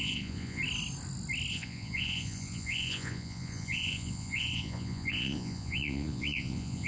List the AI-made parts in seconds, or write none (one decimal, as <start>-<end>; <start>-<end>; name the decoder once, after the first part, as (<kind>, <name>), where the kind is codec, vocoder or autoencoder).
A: 0.0-0.6 (vocoder, Vocos); 1.5-6.9